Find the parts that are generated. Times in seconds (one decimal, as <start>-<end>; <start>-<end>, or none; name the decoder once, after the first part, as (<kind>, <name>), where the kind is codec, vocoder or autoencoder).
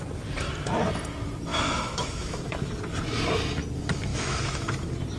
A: 1.5-2.7 (autoencoder, DAC-VAE); 4.1-4.7